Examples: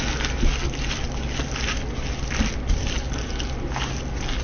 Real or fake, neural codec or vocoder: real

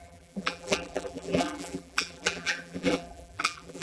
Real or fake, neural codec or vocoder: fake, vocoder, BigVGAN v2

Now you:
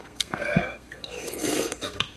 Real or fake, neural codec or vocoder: fake, codec, SNAC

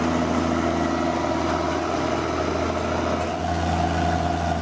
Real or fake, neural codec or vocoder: real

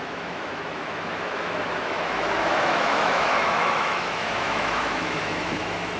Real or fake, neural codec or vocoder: fake, autoencoder, DAC-VAE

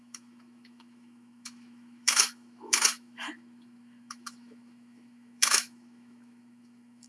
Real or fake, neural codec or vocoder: fake, autoencoder, DAC-VAE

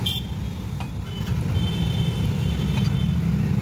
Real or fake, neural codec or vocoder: real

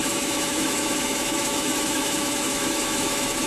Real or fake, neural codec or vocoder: fake, autoencoder, DAC-VAE